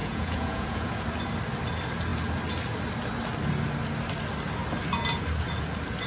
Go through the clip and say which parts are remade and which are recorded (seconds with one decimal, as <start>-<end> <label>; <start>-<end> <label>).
0.0-1.0 remade; 1.0-6.1 recorded